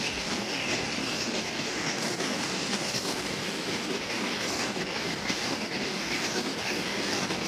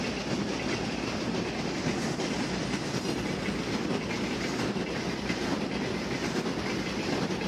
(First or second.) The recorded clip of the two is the second